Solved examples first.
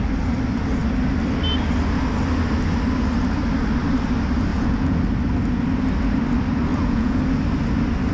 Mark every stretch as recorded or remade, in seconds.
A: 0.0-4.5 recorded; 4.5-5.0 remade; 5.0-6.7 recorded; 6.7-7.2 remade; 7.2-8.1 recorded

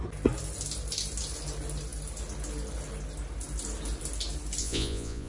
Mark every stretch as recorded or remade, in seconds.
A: 0.0-4.6 recorded; 4.6-5.3 remade